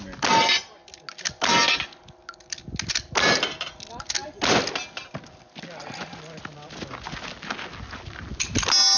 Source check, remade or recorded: recorded